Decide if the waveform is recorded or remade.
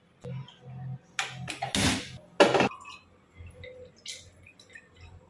recorded